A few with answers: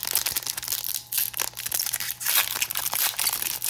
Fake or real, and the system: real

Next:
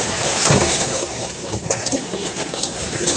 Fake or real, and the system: fake, codec, SNAC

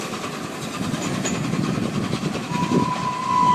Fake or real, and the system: real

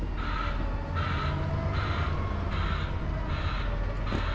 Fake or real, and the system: real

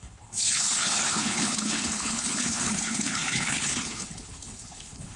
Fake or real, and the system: fake, codec, HILCodec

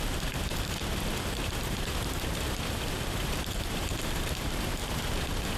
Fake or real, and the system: fake, vocoder, BigVGAN v2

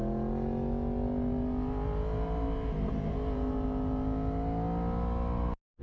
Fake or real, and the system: real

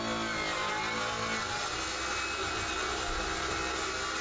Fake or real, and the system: real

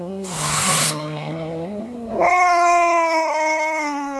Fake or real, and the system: fake, codec, SNAC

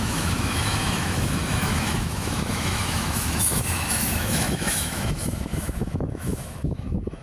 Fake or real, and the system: fake, autoencoder, DAC-VAE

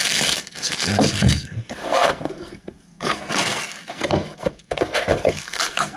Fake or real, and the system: fake, codec, SNAC